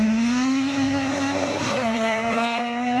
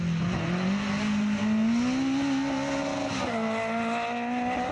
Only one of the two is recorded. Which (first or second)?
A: second